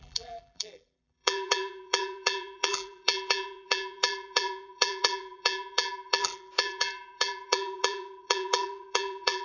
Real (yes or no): no